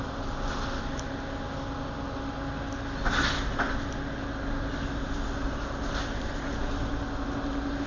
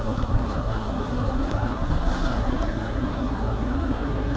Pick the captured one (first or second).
first